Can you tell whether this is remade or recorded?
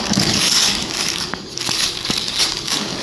remade